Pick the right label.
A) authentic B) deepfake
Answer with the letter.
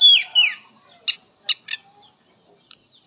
A